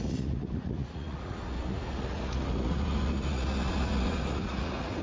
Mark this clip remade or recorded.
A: remade